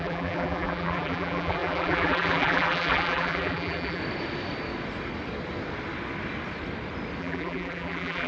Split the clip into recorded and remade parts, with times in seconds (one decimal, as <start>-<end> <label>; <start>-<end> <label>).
0.0-4.0 remade; 4.0-7.2 recorded; 7.2-8.3 remade